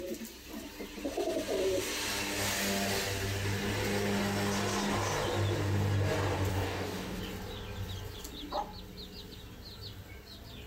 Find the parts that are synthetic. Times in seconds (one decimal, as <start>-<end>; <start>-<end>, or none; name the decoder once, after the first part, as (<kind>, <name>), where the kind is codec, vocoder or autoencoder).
6.5-7.2 (codec, DAC)